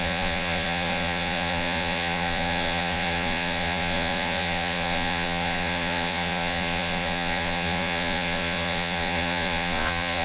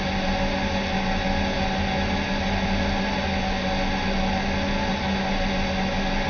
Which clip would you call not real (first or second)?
first